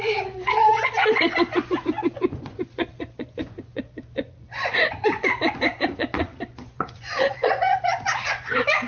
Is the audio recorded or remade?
remade